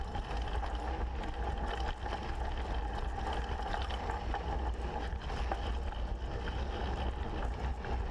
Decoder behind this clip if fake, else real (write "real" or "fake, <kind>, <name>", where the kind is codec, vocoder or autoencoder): real